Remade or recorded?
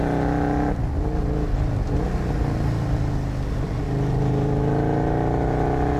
recorded